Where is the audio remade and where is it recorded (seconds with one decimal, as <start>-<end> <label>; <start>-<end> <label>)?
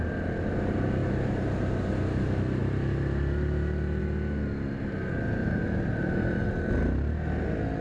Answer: 0.0-1.0 recorded; 1.0-2.0 remade; 2.0-5.4 recorded; 5.4-6.7 remade; 6.7-7.8 recorded